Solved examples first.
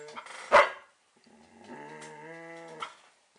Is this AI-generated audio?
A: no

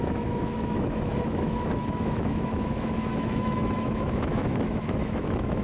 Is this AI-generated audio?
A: yes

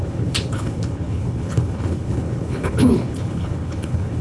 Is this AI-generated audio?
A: yes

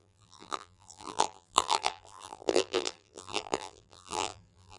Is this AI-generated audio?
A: yes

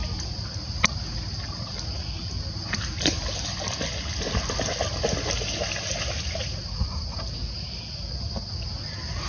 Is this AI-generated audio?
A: no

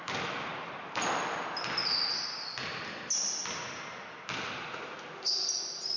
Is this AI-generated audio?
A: no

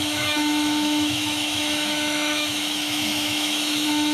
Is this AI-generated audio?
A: yes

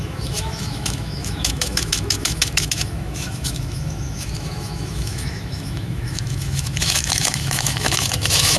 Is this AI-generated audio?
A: yes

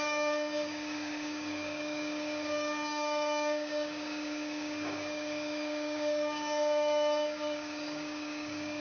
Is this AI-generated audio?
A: yes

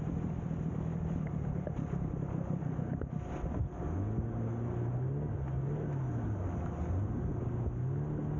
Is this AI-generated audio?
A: no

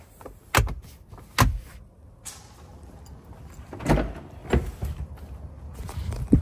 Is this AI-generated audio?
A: no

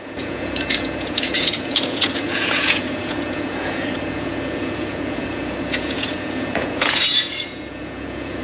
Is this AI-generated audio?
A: yes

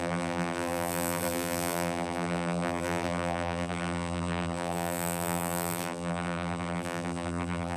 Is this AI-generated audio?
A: yes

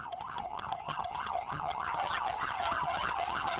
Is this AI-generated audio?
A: yes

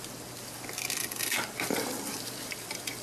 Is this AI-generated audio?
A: no